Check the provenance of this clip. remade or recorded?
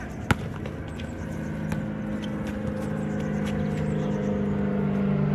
recorded